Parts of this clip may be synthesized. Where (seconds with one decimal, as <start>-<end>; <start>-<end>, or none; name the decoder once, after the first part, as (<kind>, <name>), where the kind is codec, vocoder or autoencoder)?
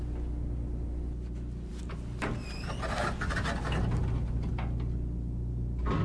none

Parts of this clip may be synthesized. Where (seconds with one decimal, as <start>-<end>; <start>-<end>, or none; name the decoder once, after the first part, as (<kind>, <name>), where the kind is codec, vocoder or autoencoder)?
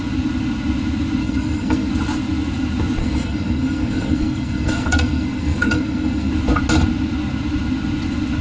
1.2-1.9 (codec, SNAC); 3.0-6.3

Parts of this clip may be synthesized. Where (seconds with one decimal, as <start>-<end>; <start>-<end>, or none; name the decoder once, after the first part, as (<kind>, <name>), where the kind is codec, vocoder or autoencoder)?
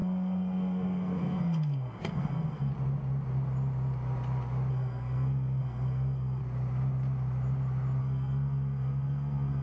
0.0-2.7 (codec, SNAC); 4.7-6.4; 8.0-9.6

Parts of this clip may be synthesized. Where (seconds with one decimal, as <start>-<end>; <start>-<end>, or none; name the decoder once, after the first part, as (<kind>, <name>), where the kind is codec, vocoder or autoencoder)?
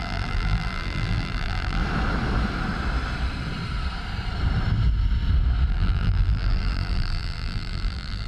0.0-1.8 (vocoder, BigVGAN v2); 5.7-8.3